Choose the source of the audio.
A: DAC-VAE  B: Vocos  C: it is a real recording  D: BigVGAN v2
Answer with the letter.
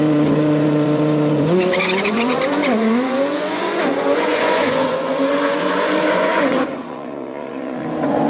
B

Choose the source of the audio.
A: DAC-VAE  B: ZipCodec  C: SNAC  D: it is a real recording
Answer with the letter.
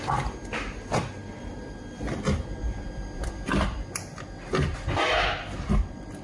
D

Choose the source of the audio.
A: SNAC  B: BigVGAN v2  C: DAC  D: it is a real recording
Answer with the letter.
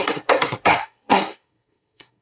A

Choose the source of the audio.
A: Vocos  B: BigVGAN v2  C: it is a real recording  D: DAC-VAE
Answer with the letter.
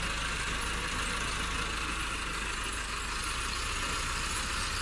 C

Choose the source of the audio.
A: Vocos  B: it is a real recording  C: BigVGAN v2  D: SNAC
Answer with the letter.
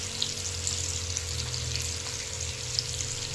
B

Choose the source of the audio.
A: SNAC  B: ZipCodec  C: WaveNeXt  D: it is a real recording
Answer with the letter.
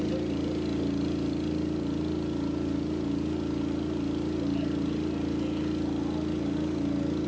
D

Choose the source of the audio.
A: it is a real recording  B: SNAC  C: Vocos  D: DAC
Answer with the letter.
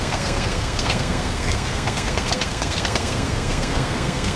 B